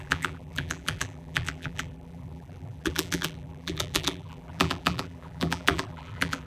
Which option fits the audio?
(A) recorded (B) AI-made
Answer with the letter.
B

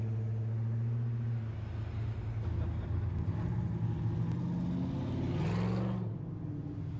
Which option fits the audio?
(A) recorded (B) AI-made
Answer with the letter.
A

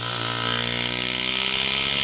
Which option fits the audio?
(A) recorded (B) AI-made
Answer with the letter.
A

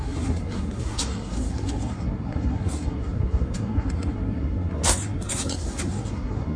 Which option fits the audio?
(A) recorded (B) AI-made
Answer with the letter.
B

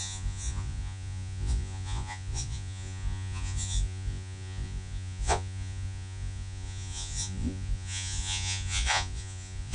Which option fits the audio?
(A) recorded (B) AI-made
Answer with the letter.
B